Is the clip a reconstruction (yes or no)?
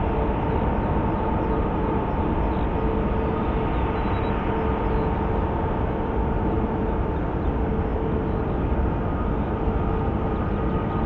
no